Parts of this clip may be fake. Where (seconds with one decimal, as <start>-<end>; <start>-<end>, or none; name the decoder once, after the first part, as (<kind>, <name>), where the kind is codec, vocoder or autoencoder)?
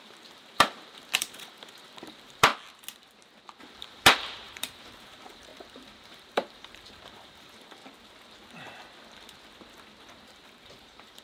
0.0-2.5 (vocoder, BigVGAN v2); 3.6-7.8; 10.3-11.2